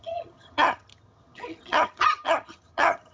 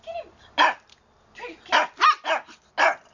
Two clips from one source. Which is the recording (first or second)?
second